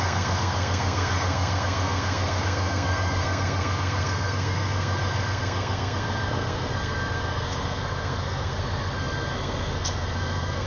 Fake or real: fake